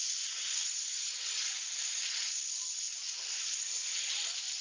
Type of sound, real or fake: real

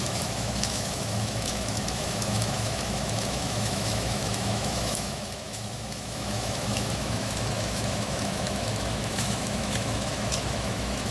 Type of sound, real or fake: fake